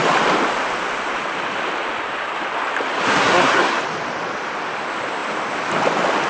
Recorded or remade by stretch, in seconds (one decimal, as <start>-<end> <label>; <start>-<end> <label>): 0.0-3.1 recorded; 3.1-3.8 remade; 3.8-6.3 recorded